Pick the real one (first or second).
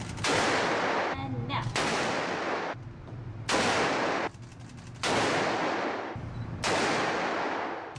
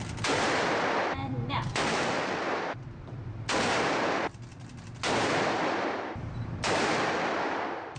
first